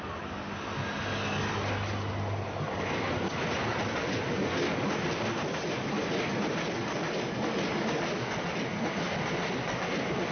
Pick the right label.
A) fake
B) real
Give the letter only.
B